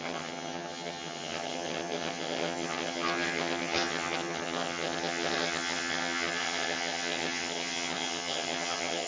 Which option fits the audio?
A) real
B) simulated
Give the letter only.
B